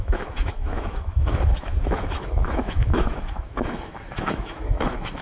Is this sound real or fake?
fake